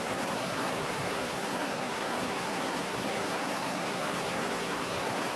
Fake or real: fake